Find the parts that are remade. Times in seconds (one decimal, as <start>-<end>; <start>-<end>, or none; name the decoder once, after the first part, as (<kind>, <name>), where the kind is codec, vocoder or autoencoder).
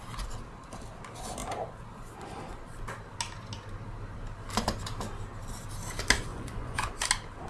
6.3-6.9 (vocoder, Vocos)